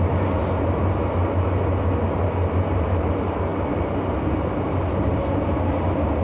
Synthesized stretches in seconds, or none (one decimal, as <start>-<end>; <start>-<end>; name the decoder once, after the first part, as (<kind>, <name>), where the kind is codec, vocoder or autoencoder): none